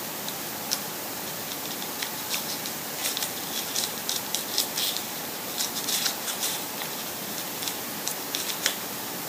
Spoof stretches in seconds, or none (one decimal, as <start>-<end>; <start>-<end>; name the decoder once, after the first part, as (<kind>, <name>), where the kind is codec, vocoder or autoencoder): 0.0-9.3 (vocoder, BigVGAN v2)